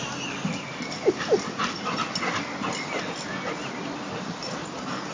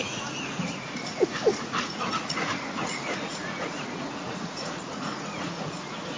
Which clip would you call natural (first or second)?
first